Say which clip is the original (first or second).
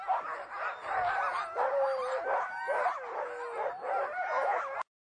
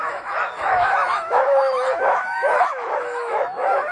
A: first